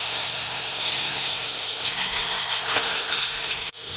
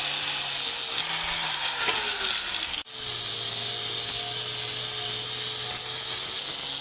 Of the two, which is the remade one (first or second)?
first